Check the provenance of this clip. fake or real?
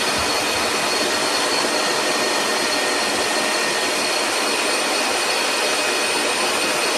real